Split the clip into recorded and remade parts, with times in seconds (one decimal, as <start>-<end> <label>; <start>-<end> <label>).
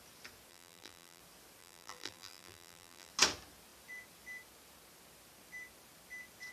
0.0-0.5 recorded; 0.5-1.2 remade; 1.2-1.6 recorded; 1.6-3.1 remade; 3.1-6.5 recorded